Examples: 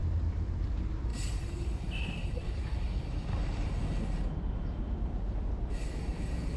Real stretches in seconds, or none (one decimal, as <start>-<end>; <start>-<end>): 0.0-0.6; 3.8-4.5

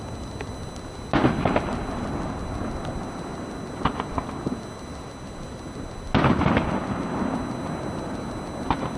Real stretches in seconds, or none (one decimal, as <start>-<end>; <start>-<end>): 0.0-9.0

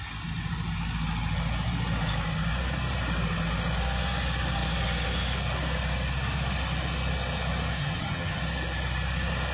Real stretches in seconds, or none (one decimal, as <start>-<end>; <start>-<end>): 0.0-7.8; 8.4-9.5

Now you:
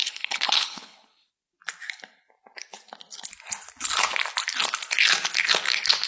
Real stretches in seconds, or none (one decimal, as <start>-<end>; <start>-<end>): 1.3-6.1

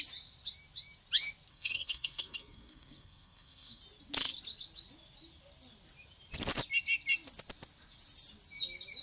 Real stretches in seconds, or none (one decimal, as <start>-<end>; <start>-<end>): 0.0-1.5; 3.8-9.0